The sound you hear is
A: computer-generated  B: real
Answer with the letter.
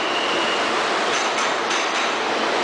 B